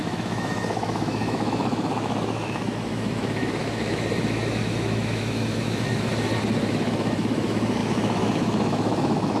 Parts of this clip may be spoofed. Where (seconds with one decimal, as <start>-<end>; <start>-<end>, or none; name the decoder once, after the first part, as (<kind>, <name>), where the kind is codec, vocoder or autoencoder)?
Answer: 0.0-6.1 (autoencoder, DAC-VAE); 6.7-9.4